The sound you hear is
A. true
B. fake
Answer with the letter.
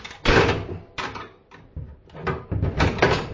A